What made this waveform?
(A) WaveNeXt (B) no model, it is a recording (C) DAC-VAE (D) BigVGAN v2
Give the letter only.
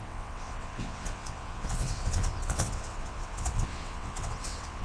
A